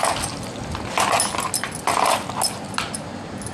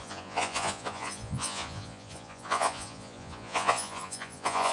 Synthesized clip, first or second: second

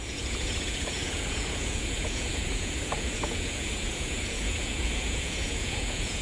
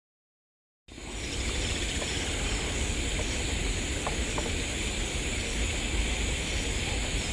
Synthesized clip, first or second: first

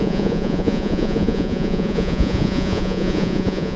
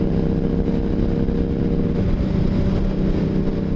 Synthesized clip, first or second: first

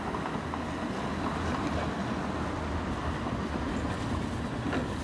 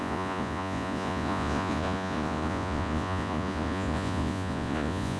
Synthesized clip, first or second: second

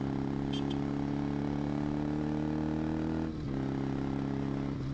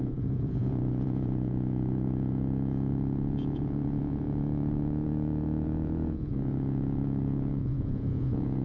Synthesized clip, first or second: second